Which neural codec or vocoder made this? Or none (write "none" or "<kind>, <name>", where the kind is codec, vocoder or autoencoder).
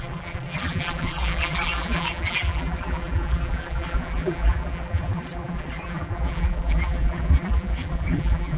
vocoder, BigVGAN v2